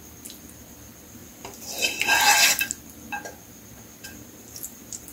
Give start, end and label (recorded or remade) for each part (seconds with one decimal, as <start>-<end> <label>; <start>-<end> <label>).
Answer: 0.0-5.1 recorded